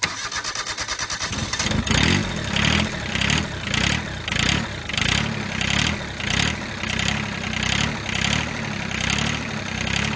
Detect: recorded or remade recorded